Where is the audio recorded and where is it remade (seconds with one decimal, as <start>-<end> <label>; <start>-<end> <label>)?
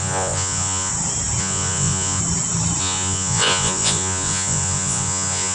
0.0-0.9 remade; 0.9-1.4 recorded; 1.4-2.2 remade; 2.2-2.8 recorded; 2.8-5.5 remade